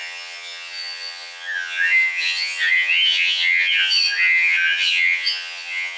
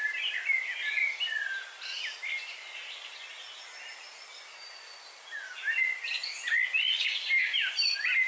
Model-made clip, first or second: first